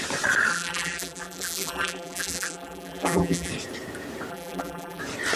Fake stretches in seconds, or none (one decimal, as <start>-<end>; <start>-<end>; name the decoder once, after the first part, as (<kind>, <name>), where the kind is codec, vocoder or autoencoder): 0.5-3.5 (vocoder, BigVGAN v2); 4.3-5.0